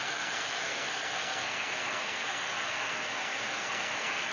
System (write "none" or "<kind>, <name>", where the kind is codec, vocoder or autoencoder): codec, SNAC